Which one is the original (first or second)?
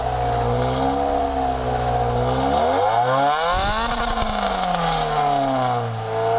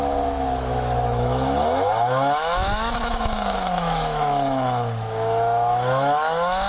first